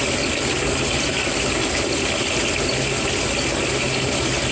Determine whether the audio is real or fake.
real